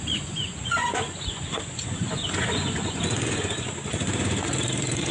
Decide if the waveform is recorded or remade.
remade